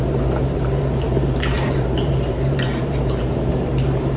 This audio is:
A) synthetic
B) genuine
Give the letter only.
A